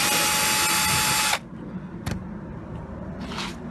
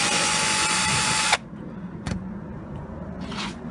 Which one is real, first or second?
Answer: first